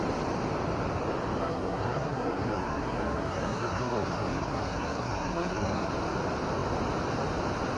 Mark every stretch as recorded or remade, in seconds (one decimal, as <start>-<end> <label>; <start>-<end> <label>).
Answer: 0.0-1.4 recorded; 1.4-5.9 remade; 5.9-7.8 recorded